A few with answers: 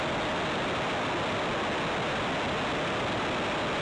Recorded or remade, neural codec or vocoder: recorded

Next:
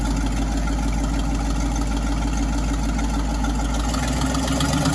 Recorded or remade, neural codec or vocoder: recorded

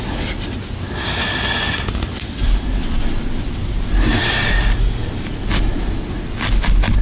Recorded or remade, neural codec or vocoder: recorded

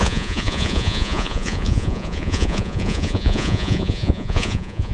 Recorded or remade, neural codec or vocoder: remade, vocoder, Vocos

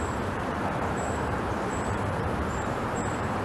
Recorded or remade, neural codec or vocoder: remade, vocoder, BigVGAN v2